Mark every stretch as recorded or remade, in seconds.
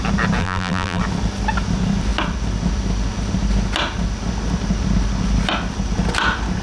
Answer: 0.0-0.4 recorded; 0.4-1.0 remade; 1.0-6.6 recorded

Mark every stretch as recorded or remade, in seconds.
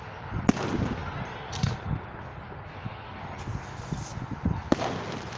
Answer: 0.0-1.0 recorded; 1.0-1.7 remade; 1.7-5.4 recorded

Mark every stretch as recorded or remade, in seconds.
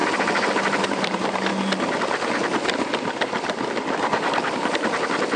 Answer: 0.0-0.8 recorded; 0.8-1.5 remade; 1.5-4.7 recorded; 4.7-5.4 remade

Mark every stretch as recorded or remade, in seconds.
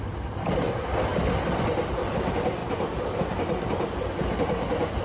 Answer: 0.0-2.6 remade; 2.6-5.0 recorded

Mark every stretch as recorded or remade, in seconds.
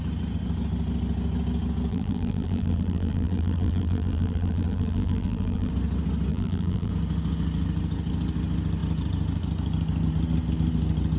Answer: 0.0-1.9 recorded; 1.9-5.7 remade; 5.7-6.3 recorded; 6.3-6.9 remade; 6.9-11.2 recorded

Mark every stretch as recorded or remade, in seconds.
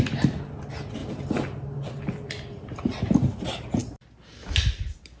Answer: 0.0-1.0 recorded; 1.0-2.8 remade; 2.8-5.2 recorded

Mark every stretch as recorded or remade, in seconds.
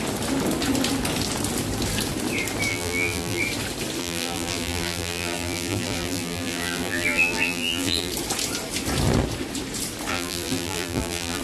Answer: 0.0-2.7 recorded; 2.7-3.4 remade; 3.4-4.0 recorded; 4.0-8.1 remade; 8.1-10.1 recorded; 10.1-11.4 remade